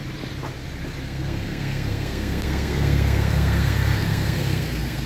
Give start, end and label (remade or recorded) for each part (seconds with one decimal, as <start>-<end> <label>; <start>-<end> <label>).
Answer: 0.0-1.0 recorded; 1.0-5.1 remade